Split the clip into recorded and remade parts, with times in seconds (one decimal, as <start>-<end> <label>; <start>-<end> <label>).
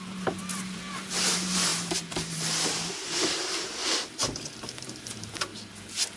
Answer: 0.0-3.8 remade; 3.8-4.5 recorded; 4.5-5.5 remade; 5.5-6.2 recorded